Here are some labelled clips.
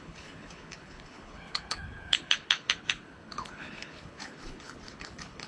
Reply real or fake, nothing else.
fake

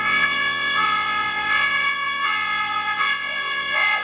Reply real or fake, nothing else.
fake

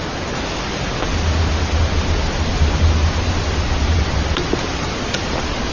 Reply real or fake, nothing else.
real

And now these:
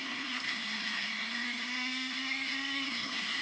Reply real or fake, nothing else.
fake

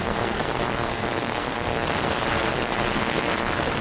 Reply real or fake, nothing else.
fake